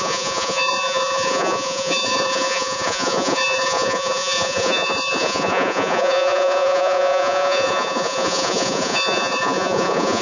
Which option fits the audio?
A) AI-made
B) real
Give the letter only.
A